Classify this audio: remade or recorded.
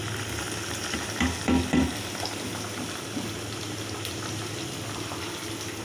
recorded